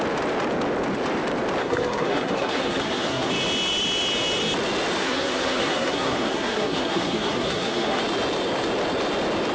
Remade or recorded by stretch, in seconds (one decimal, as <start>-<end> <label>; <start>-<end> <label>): 0.0-1.6 recorded; 1.6-3.3 remade; 3.3-5.0 recorded; 5.0-8.0 remade; 8.0-9.5 recorded